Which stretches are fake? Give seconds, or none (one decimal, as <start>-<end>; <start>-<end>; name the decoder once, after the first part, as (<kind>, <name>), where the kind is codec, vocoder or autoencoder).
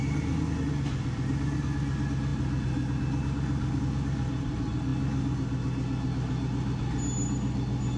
none